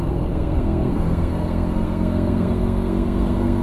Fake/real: fake